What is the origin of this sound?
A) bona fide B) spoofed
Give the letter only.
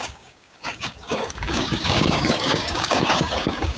B